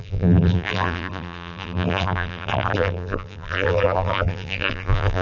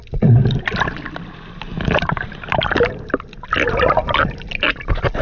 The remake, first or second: first